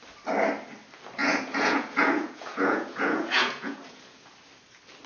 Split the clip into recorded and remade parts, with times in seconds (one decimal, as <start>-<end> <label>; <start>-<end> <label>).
0.0-1.2 recorded; 1.2-4.3 remade; 4.3-5.1 recorded